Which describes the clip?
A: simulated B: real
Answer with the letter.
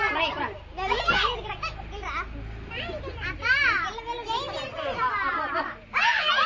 B